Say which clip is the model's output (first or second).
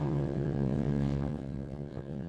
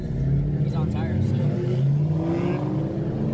first